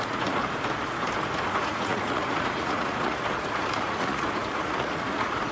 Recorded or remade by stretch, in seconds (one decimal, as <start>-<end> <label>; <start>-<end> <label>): 0.0-0.4 remade; 0.4-1.3 recorded; 1.3-5.5 remade

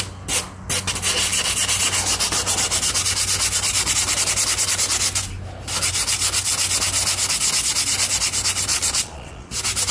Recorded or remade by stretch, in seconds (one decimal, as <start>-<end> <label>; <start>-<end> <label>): 0.0-8.7 recorded; 8.7-9.5 remade; 9.5-9.9 recorded

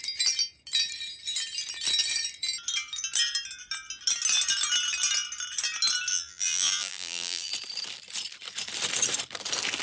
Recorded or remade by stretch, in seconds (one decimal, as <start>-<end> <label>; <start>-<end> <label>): 0.0-6.1 recorded; 6.1-7.5 remade; 7.5-9.8 recorded

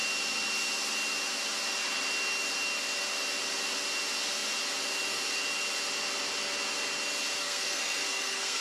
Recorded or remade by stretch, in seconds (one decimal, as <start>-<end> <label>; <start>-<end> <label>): 0.0-7.4 recorded; 7.4-8.6 remade

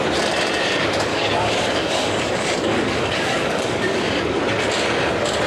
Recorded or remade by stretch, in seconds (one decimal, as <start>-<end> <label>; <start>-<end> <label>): 0.0-1.1 recorded; 1.1-4.4 remade; 4.4-5.5 recorded

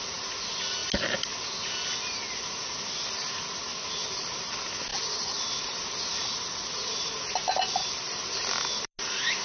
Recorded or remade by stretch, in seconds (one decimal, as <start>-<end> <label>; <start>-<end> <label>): 0.0-9.4 recorded

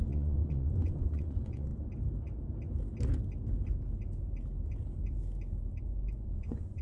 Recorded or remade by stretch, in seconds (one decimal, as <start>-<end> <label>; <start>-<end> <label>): 0.0-1.7 remade; 1.7-5.8 recorded; 5.8-6.8 remade